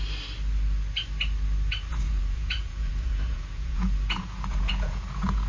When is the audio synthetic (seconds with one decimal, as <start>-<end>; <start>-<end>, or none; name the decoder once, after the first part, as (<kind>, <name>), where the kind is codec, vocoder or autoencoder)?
1.9-5.5 (vocoder, Vocos)